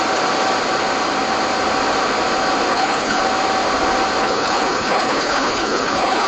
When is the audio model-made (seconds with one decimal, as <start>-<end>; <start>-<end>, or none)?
2.7-3.2; 4.2-6.3